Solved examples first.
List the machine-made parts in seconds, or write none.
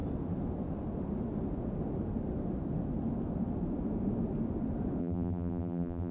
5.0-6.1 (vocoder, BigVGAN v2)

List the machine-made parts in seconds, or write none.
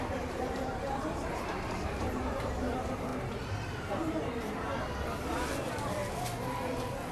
0.0-3.1 (vocoder, BigVGAN v2); 3.9-4.7; 5.6-6.0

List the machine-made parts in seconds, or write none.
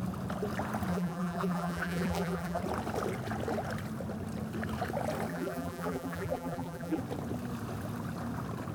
0.9-2.6 (vocoder, BigVGAN v2); 5.3-7.0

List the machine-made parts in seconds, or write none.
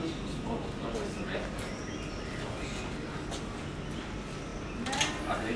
none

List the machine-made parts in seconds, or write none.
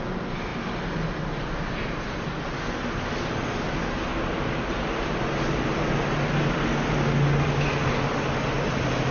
none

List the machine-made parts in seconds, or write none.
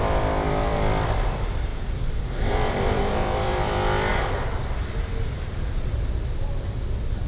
0.0-4.1 (vocoder, BigVGAN v2); 4.9-7.3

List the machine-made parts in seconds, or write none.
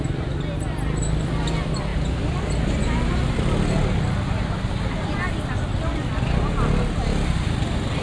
1.9-3.4 (vocoder, BigVGAN v2)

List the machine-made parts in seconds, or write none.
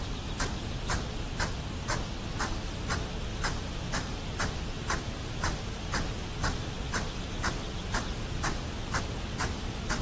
2.3-2.9 (vocoder, BigVGAN v2); 3.3-4.2; 5.2-9.0